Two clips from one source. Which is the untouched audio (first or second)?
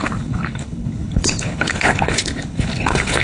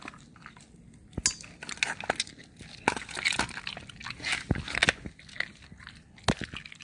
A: second